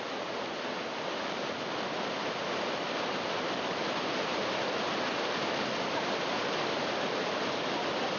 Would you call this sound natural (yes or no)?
yes